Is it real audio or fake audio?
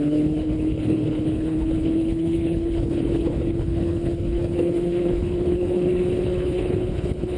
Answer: fake